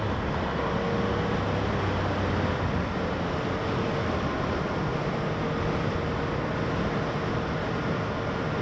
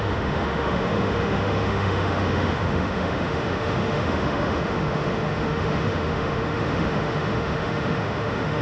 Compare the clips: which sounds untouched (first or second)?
first